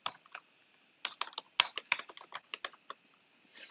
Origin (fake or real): real